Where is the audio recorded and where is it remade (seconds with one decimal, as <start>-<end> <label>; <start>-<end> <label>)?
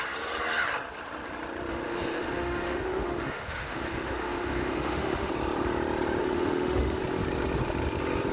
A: 0.0-1.7 recorded; 1.7-5.3 remade; 5.3-6.2 recorded; 6.2-7.0 remade; 7.0-8.3 recorded